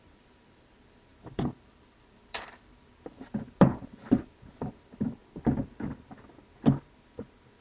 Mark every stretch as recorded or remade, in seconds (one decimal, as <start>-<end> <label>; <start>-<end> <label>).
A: 0.0-5.2 remade; 5.2-7.6 recorded